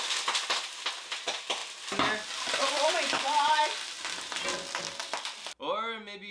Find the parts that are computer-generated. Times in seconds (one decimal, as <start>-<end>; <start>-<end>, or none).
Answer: none